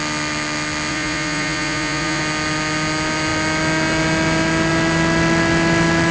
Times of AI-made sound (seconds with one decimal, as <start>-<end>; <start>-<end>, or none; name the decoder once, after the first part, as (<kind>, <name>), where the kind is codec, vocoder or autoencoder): 0.9-2.2 (vocoder, Vocos)